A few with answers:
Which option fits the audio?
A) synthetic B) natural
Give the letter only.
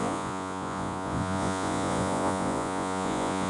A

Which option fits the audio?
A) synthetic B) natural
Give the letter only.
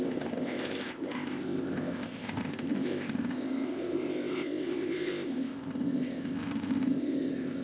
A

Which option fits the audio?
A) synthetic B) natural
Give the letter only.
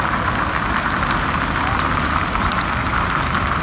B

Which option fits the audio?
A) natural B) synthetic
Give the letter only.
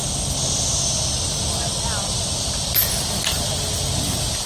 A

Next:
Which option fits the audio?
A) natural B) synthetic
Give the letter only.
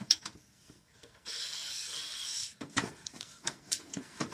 B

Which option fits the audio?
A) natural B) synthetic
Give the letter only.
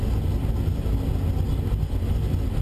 A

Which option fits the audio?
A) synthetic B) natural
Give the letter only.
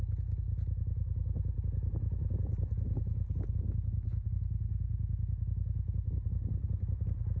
B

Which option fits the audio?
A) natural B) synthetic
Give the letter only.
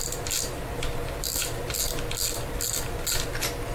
A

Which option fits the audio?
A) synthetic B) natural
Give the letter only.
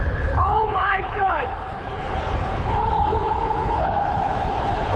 A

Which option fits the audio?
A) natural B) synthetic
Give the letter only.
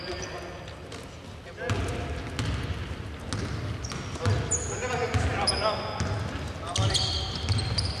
A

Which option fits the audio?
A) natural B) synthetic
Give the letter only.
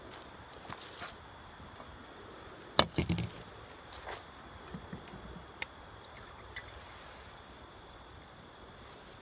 A